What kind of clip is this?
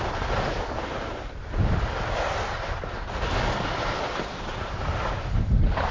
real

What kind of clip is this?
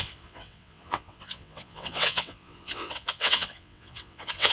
fake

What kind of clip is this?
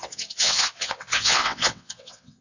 fake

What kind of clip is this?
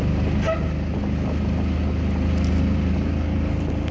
real